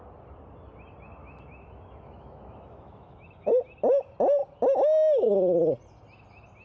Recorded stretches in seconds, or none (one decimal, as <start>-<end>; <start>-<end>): 0.0-1.2; 3.5-6.6

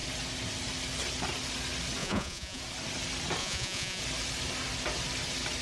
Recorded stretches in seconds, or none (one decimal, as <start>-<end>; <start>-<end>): 0.0-2.0; 2.6-3.4; 4.0-5.6

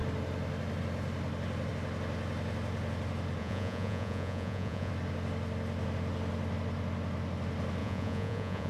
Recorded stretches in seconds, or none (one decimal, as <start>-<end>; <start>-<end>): 0.0-3.4; 4.9-7.8

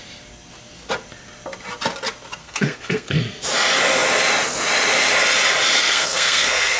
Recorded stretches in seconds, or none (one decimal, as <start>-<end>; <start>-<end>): 0.0-2.4; 3.2-5.8

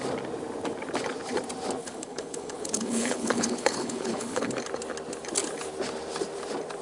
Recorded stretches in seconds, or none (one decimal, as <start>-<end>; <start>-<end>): 0.0-1.8; 4.5-6.8

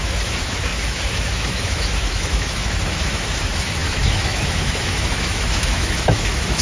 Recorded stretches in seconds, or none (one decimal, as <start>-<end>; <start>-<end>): none

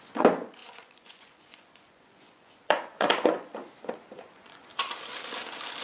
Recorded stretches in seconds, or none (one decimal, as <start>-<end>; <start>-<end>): 4.7-5.8